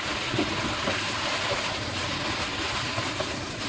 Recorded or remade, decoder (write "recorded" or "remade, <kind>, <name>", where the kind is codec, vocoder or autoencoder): recorded